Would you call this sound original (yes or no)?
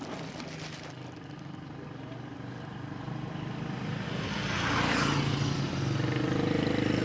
yes